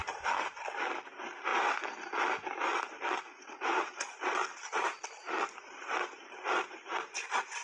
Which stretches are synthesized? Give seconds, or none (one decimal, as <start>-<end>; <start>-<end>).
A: none